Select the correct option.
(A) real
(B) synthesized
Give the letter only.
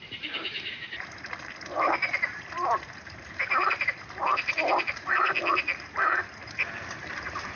B